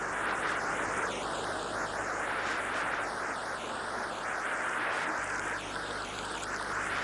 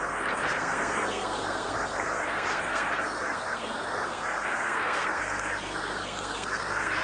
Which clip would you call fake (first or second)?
second